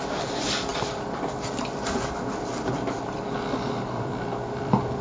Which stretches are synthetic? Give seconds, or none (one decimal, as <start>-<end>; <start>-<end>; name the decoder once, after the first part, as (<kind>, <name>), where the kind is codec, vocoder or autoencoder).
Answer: none